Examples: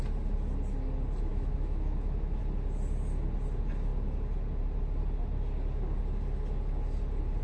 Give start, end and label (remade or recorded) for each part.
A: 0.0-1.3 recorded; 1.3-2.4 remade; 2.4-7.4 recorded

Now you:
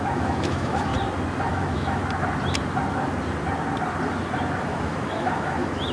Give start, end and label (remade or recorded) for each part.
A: 0.0-0.9 remade; 0.9-1.5 recorded; 1.5-2.0 remade; 2.0-4.6 recorded; 4.6-5.9 remade

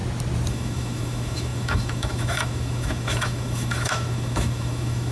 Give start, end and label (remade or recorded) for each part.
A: 0.0-0.5 recorded; 0.5-5.1 remade

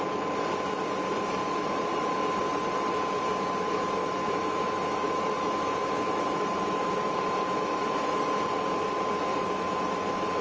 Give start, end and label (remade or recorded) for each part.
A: 0.0-1.4 recorded; 1.4-2.1 remade; 2.1-4.0 recorded; 4.0-8.2 remade; 8.2-9.3 recorded; 9.3-9.8 remade; 9.8-10.4 recorded

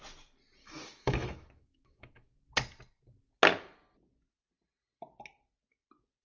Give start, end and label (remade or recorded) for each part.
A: 0.0-0.6 recorded; 0.6-2.4 remade; 2.4-6.2 recorded